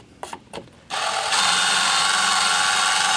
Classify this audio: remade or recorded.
recorded